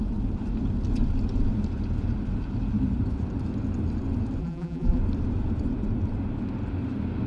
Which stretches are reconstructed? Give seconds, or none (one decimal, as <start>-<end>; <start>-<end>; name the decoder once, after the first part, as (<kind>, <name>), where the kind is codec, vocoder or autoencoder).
4.4-5.0 (vocoder, BigVGAN v2)